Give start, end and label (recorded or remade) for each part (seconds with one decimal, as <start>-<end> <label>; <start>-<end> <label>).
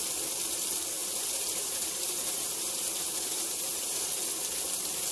0.0-1.0 recorded; 1.0-4.1 remade; 4.1-5.1 recorded